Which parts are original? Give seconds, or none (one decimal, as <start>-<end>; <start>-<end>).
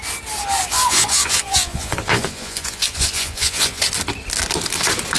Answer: 0.0-0.7; 3.8-5.2